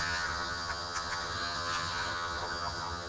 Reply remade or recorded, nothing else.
remade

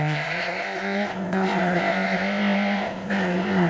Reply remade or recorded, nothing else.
remade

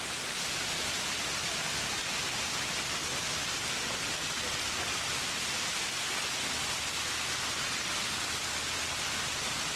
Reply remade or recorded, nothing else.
recorded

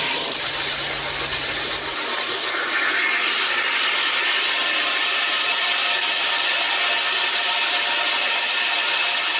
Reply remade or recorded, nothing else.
recorded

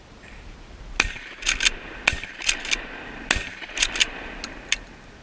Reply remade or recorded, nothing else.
recorded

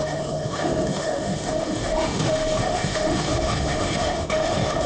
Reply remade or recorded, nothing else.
remade